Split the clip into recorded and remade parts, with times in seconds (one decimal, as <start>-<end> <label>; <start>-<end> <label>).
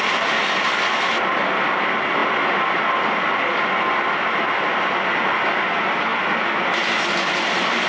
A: 0.0-7.9 recorded